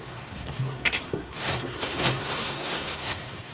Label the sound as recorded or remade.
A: remade